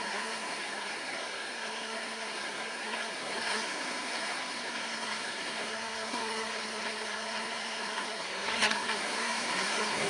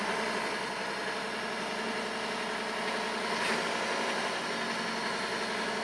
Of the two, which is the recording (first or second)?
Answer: second